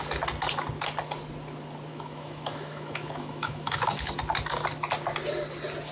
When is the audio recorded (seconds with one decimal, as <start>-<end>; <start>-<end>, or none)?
0.0-1.9; 4.1-5.9